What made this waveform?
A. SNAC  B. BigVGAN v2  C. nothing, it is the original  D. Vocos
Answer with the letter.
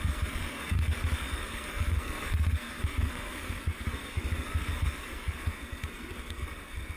A